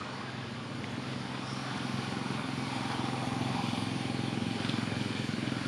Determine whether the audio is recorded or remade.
remade